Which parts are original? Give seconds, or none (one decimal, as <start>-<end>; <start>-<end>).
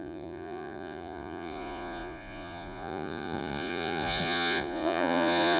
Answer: none